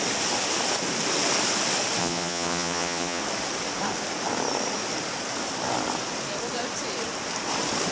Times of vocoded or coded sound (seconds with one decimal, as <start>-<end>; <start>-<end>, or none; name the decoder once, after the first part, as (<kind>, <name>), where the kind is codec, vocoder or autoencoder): 2.0-3.2 (vocoder, Vocos)